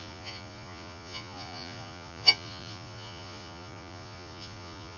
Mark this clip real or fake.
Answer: fake